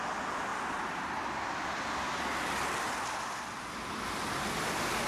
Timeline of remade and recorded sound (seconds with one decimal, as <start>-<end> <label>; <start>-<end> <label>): 0.0-5.1 recorded